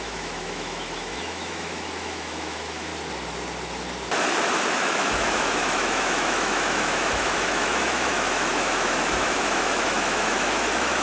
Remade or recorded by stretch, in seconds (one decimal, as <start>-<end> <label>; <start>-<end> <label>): 0.0-2.9 remade; 2.9-4.7 recorded; 4.7-11.0 remade